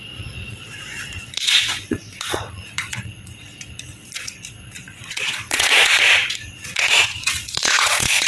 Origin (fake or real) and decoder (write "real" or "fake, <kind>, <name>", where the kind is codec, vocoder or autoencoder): fake, vocoder, Vocos